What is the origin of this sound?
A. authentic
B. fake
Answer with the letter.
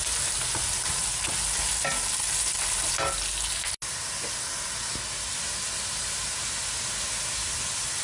A